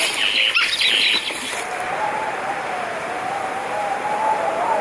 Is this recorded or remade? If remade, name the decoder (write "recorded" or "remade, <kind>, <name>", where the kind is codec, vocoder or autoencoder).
recorded